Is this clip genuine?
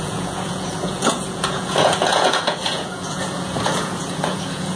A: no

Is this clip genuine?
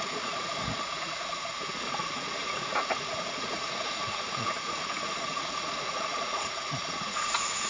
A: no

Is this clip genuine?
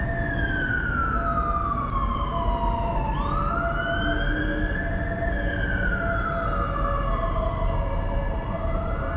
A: yes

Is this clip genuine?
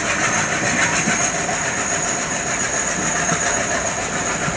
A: yes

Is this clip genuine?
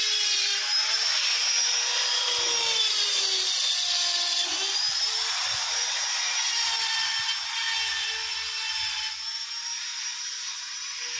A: yes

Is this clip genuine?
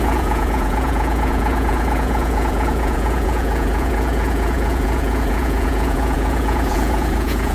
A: no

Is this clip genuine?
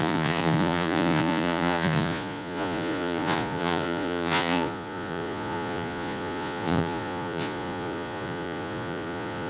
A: no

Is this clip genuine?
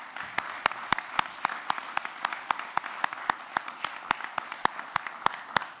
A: yes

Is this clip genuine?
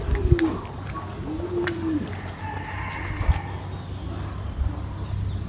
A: yes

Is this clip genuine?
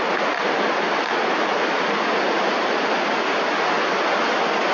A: yes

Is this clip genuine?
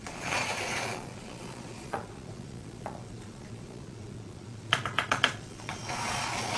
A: no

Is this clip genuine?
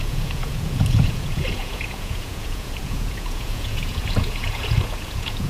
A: no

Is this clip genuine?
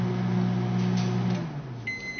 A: yes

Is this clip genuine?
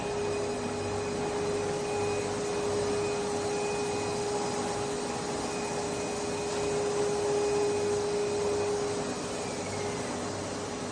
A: yes